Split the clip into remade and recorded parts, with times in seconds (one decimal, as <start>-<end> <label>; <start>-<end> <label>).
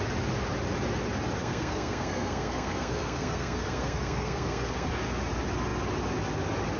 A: 0.0-1.4 recorded; 1.4-4.9 remade; 4.9-6.8 recorded